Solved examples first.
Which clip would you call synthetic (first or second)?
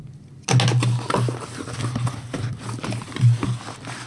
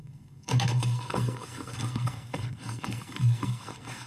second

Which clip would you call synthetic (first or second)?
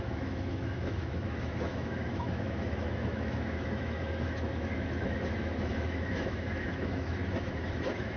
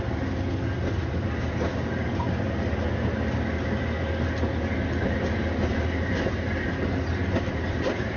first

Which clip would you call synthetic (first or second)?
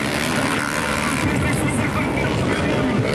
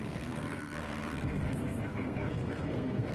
second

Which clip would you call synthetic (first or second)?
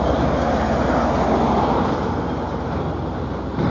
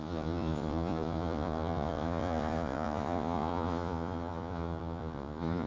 second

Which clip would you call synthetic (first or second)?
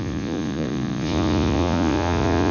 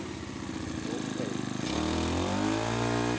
first